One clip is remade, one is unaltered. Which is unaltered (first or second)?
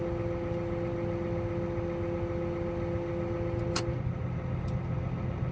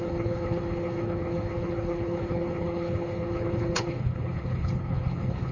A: first